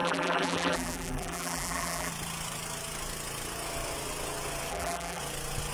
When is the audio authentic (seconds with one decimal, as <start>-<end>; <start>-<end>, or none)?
2.1-4.7; 5.2-5.7